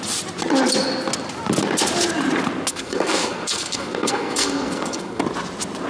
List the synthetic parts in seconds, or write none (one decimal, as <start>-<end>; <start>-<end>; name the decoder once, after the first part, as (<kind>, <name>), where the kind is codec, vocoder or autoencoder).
2.7-5.2 (codec, SNAC)